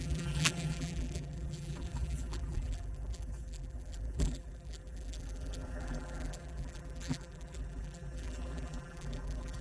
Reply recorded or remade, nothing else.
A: remade